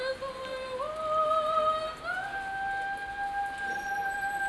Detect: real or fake real